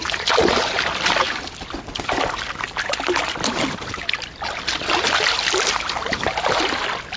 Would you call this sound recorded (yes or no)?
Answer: yes